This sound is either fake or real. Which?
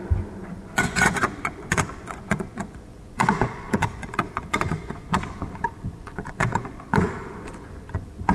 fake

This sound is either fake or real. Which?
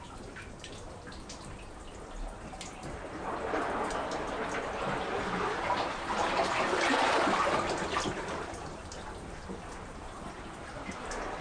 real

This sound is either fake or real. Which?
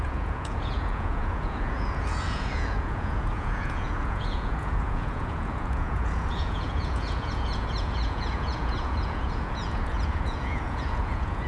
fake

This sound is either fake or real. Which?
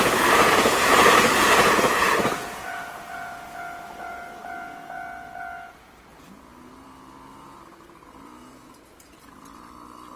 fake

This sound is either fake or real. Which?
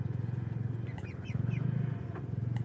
fake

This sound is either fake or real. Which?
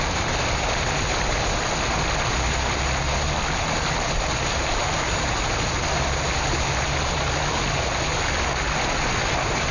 real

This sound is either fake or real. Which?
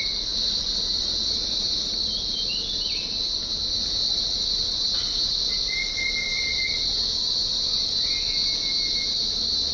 real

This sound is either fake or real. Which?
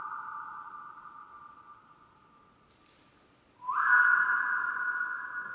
real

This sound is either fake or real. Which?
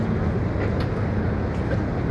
real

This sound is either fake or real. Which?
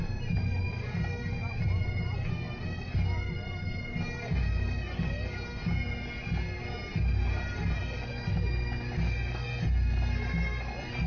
real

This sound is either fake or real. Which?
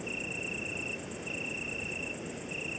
real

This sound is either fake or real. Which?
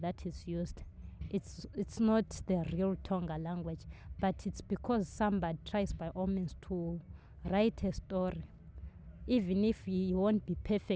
real